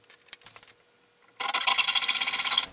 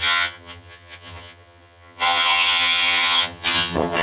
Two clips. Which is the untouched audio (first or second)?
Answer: first